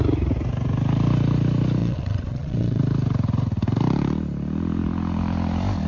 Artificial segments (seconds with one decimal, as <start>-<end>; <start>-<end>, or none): 1.8-2.8